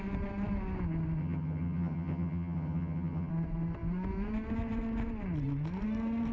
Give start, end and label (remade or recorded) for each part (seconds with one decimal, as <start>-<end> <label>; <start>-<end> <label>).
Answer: 0.0-1.2 recorded; 1.2-3.3 remade; 3.3-6.3 recorded